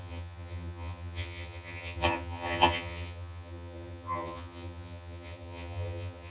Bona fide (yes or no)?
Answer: no